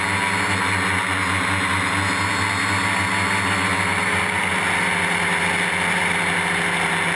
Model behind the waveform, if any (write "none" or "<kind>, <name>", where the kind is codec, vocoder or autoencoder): none